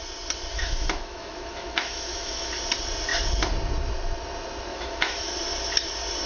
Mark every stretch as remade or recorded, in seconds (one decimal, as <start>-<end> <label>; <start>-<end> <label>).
0.0-0.5 recorded; 0.5-2.5 remade; 2.5-4.7 recorded; 4.7-5.3 remade; 5.3-6.3 recorded